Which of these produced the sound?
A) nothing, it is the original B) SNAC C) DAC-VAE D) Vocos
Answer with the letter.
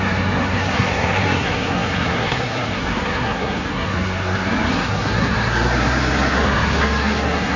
B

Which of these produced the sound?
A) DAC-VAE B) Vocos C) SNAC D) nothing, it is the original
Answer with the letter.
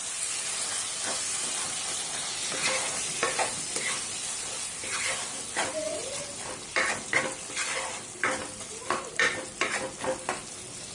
D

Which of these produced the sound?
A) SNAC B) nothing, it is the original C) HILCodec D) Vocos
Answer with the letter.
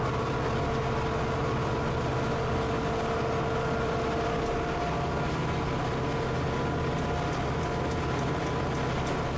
B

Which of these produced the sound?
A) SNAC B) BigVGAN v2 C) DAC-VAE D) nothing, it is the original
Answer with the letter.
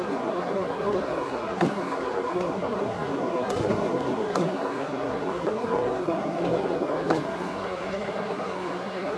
A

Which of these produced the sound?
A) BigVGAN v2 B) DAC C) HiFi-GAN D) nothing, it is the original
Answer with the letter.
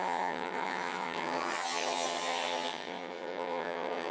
C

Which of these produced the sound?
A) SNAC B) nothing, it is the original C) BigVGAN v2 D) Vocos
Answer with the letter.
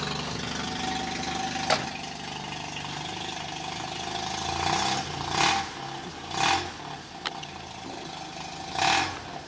B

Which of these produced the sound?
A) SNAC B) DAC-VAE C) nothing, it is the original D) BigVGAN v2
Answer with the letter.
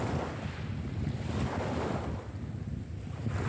C